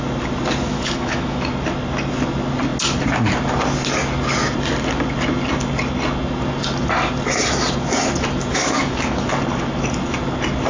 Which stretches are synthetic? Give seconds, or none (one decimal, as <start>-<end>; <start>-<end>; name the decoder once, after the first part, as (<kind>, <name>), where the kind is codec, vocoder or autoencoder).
0.7-1.5 (autoencoder, DAC-VAE); 8.5-9.3